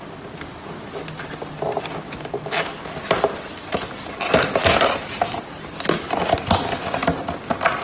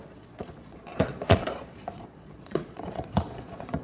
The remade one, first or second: second